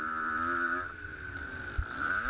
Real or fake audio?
real